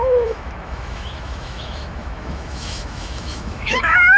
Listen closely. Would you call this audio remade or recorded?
remade